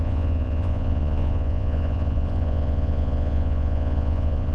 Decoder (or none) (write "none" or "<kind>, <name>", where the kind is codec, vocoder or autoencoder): vocoder, Vocos